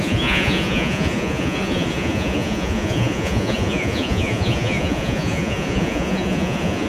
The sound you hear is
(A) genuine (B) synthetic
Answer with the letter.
B